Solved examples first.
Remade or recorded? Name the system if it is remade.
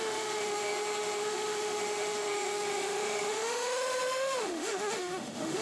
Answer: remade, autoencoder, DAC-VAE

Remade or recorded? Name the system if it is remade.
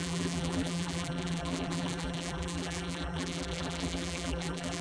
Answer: remade, vocoder, BigVGAN v2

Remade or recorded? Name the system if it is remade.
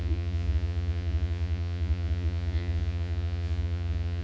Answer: remade, vocoder, Vocos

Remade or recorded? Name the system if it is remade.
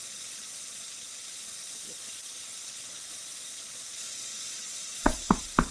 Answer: remade, vocoder, Vocos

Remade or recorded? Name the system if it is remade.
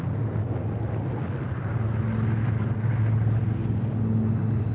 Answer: recorded